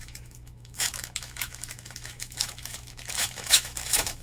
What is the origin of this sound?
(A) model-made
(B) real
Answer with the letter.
A